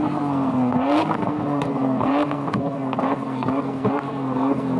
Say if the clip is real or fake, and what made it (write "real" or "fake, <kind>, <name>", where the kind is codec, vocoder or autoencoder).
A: fake, codec, SNAC